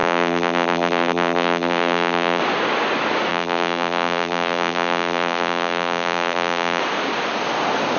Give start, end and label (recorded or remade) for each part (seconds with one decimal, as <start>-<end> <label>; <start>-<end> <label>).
0.0-2.4 remade; 2.4-3.3 recorded; 3.3-6.8 remade; 6.8-8.0 recorded